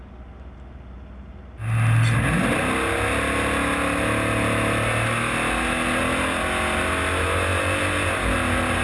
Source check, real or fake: real